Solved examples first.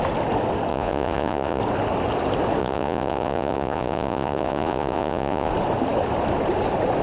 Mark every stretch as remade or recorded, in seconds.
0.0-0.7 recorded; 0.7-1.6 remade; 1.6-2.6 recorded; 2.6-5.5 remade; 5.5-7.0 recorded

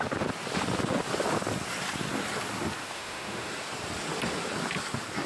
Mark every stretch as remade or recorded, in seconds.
0.0-2.8 recorded; 2.8-3.5 remade; 3.5-5.3 recorded

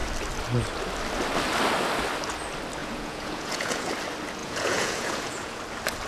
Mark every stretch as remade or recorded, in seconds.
0.0-2.8 recorded; 2.8-3.9 remade; 3.9-4.4 recorded; 4.4-5.6 remade; 5.6-6.1 recorded

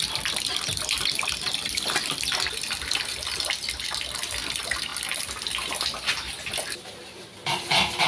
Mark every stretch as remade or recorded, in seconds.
0.0-8.1 recorded